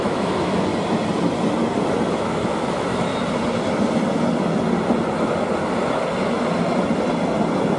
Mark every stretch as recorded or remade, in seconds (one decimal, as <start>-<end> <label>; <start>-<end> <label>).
0.0-0.7 remade; 0.7-2.1 recorded; 2.1-3.1 remade; 3.1-7.8 recorded